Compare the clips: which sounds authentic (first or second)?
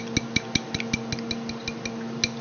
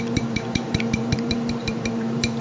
first